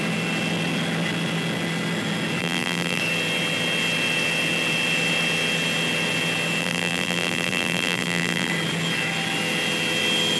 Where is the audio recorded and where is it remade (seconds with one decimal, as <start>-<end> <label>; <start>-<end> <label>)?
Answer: 0.0-2.4 recorded; 2.4-3.0 remade; 3.0-6.6 recorded; 6.6-8.5 remade; 8.5-10.4 recorded